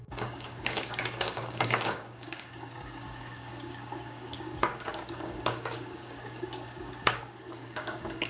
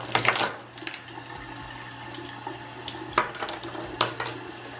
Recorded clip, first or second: second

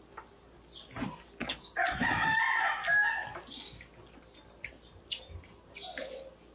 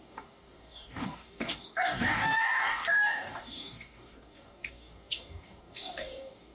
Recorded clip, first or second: first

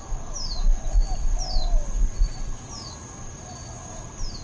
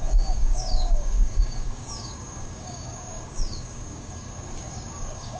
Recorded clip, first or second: first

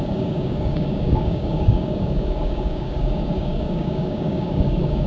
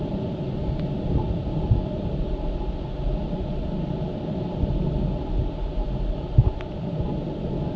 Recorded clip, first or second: second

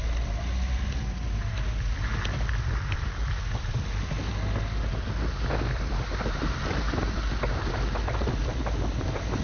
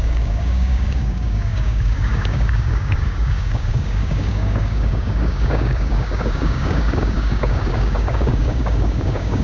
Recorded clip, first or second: first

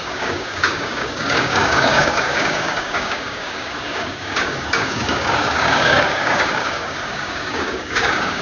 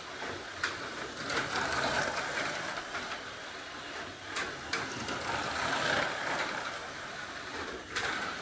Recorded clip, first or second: second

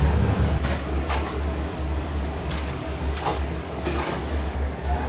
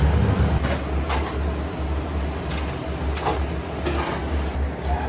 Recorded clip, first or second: second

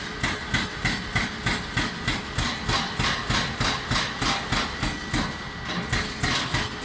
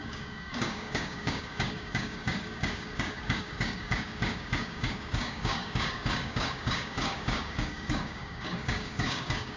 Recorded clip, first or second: first